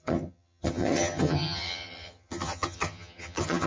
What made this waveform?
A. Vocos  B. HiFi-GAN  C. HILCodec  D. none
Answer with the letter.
B